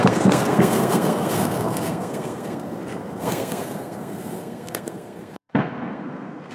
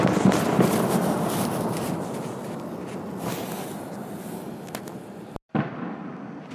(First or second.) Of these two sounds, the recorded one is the second